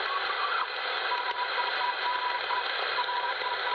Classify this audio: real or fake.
fake